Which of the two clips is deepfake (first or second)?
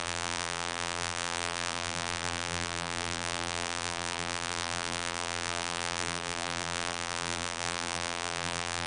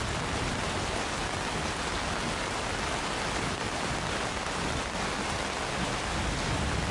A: first